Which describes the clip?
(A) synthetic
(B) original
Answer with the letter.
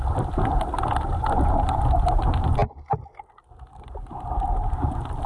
B